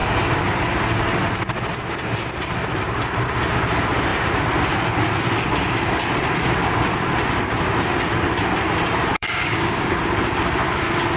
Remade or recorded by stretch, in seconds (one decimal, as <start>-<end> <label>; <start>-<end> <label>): 0.0-9.1 recorded; 9.1-10.0 remade; 10.0-11.2 recorded

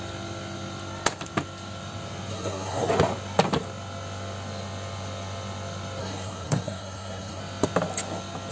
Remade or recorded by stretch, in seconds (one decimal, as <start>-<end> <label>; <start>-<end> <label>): 0.0-2.3 recorded; 2.3-2.9 remade; 2.9-6.0 recorded; 6.0-7.4 remade; 7.4-8.5 recorded

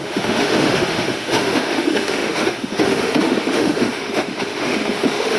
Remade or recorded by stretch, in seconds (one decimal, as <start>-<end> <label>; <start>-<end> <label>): 0.0-5.4 remade